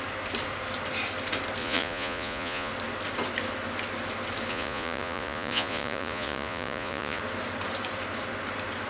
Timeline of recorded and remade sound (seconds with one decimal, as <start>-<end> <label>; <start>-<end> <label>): 0.0-1.6 recorded; 1.6-2.7 remade; 2.7-4.5 recorded; 4.5-7.2 remade; 7.2-8.9 recorded